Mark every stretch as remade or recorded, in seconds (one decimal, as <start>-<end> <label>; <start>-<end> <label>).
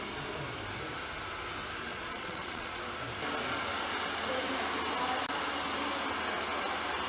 0.0-1.9 recorded; 1.9-2.8 remade; 2.8-7.1 recorded